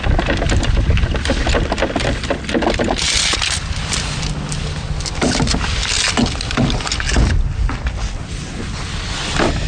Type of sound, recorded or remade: recorded